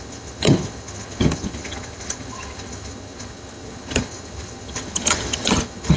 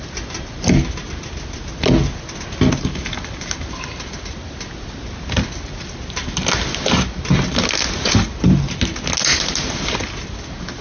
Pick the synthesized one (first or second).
first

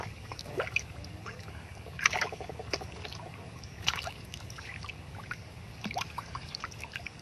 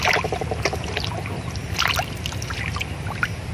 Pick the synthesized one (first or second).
first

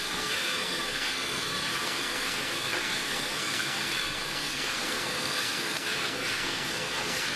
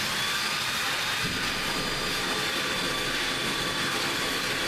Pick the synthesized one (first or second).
first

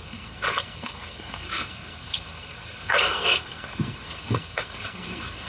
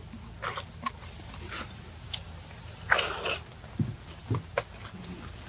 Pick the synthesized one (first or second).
first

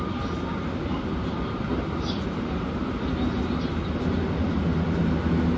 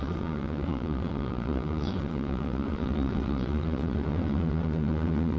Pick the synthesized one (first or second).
second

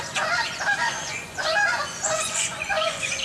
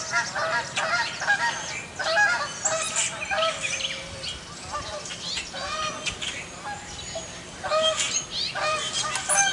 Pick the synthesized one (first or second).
first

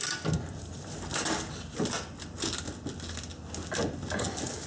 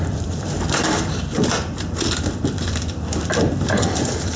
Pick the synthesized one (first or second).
second